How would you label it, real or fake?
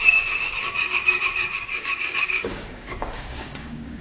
fake